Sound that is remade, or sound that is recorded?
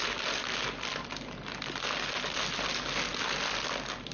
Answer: recorded